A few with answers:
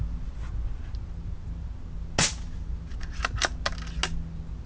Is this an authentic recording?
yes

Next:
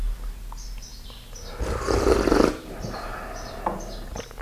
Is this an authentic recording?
yes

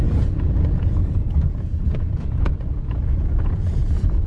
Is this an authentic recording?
no